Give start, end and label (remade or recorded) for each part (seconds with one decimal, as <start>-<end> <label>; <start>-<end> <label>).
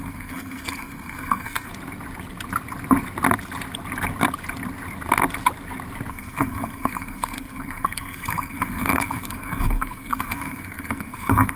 0.0-1.7 remade; 1.7-6.1 recorded; 6.1-11.6 remade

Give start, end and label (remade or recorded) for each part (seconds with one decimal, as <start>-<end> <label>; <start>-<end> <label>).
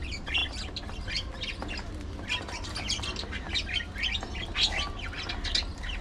0.0-6.0 recorded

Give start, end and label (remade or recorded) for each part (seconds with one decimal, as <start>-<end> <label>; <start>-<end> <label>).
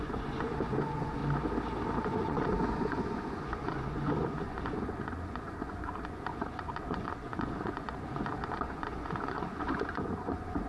0.0-1.2 remade; 1.2-2.0 recorded; 2.0-10.7 remade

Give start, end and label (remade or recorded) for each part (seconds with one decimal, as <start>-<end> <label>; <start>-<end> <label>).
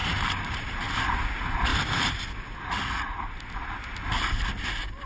0.0-0.8 remade; 0.8-1.7 recorded; 1.7-2.2 remade; 2.2-5.0 recorded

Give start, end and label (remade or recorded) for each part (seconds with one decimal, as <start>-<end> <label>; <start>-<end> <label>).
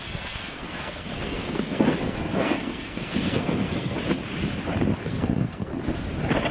0.0-4.0 remade; 4.0-5.0 recorded; 5.0-5.7 remade; 5.7-6.5 recorded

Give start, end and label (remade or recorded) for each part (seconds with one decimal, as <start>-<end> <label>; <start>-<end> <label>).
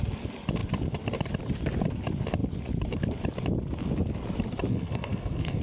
0.0-4.7 recorded; 4.7-5.6 remade